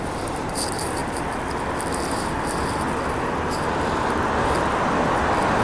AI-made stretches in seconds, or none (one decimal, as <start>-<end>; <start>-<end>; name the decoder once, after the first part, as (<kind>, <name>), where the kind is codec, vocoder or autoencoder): 0.0-1.0 (vocoder, BigVGAN v2); 4.4-5.6